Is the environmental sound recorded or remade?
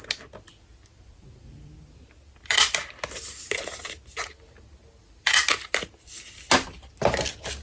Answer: recorded